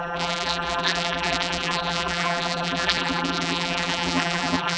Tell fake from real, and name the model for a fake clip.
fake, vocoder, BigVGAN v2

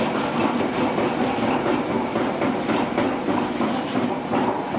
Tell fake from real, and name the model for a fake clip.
real